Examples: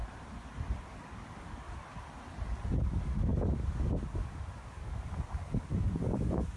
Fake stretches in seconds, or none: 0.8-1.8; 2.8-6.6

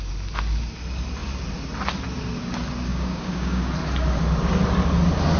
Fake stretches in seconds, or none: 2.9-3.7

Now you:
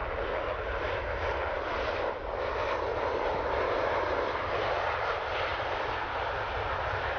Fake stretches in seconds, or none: none

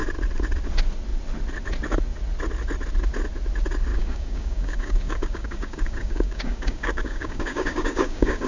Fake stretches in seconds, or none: 3.9-8.5

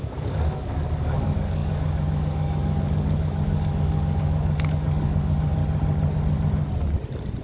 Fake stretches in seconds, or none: 0.0-5.6

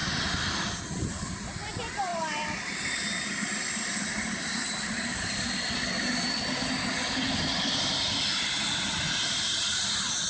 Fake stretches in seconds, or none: none